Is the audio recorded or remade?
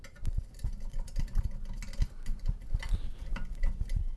recorded